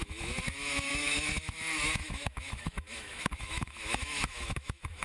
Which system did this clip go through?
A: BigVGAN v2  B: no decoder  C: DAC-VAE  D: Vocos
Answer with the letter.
C